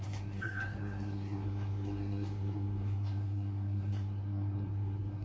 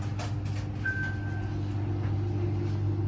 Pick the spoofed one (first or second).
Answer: first